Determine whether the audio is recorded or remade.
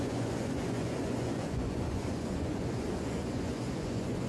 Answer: remade